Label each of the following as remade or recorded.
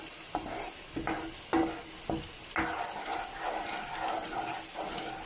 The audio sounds recorded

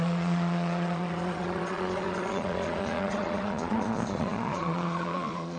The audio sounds remade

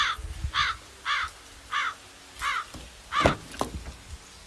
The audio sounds recorded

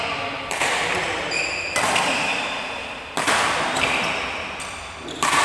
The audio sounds recorded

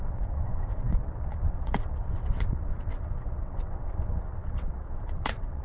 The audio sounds remade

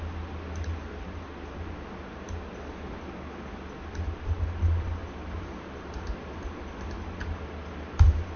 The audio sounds recorded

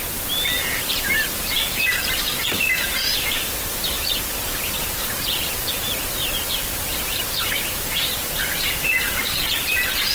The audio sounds remade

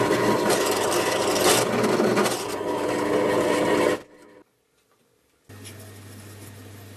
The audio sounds recorded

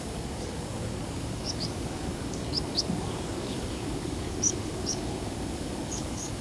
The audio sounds remade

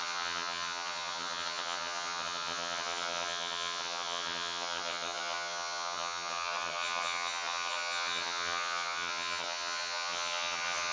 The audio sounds remade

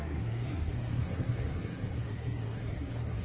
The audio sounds remade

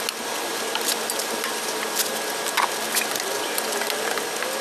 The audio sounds recorded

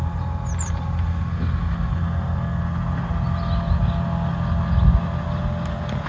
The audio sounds recorded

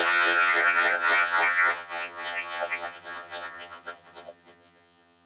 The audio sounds remade